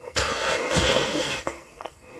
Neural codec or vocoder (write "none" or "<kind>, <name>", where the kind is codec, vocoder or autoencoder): codec, SNAC